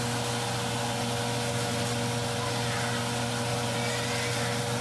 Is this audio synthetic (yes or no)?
no